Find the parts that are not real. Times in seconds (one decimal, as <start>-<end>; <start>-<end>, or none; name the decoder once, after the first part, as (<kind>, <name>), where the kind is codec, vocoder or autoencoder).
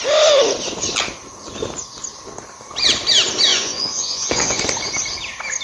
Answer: 3.5-4.6 (vocoder, Vocos)